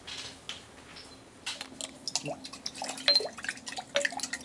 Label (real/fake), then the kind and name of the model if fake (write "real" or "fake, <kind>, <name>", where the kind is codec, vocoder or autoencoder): real